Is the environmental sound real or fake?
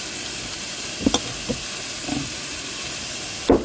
real